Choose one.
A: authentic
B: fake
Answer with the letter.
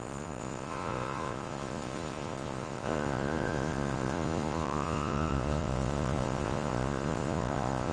B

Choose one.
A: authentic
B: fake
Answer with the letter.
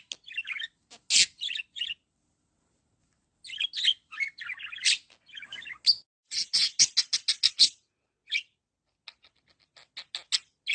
A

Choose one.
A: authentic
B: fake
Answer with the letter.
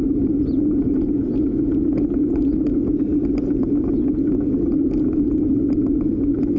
A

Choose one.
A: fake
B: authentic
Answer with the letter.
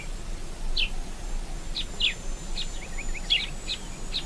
B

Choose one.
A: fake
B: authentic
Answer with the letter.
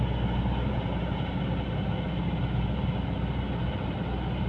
B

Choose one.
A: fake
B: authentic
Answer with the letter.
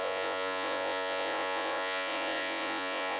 A